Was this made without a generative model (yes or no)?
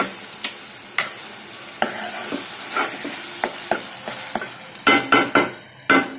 yes